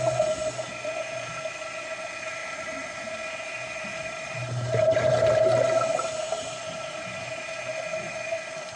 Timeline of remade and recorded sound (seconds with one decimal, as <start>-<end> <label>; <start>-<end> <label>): 0.0-2.4 recorded; 2.4-3.0 remade; 3.0-3.9 recorded; 3.9-7.5 remade; 7.5-8.8 recorded